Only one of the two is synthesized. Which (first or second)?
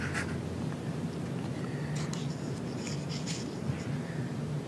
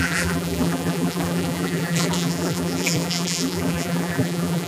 second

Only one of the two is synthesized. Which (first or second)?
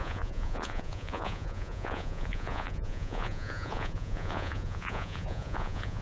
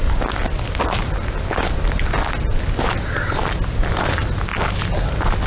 first